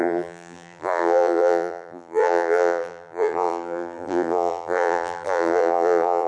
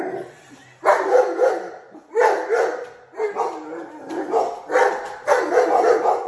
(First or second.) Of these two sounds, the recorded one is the second